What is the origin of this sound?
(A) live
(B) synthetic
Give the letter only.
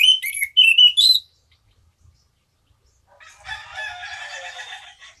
A